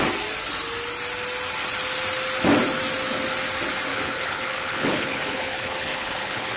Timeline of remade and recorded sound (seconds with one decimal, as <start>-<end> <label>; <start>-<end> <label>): 0.0-3.9 recorded; 3.9-6.6 remade